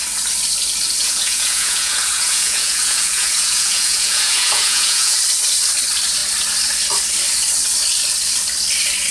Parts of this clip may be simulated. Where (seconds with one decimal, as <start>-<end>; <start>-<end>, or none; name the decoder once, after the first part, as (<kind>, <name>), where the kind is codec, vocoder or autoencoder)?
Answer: 1.0-5.2 (vocoder, Vocos)